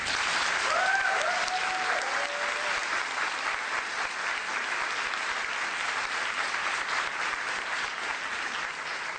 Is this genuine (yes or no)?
yes